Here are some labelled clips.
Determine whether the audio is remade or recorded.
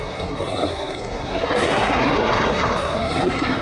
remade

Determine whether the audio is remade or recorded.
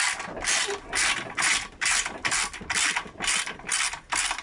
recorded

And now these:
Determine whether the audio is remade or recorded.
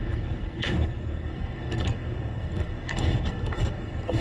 remade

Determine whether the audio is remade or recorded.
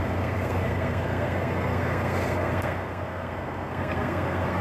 remade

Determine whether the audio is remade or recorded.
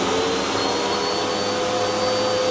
recorded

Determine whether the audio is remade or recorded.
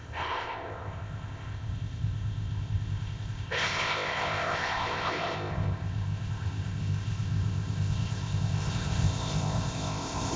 remade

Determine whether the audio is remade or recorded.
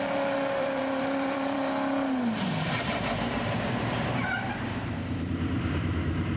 remade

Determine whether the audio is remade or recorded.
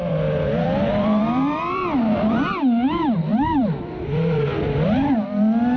remade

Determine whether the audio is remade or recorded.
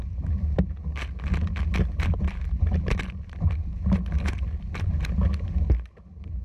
recorded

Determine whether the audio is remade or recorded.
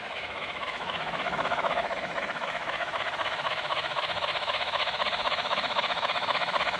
remade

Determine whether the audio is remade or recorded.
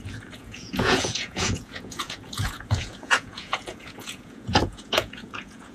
remade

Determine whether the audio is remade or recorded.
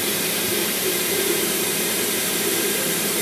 remade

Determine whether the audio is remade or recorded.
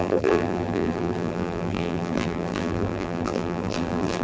remade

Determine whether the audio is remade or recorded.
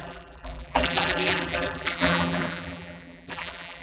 remade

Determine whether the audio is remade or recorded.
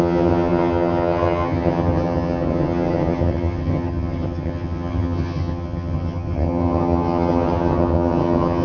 remade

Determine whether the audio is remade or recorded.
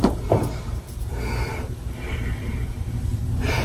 recorded